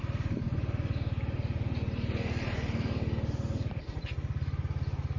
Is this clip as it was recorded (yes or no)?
yes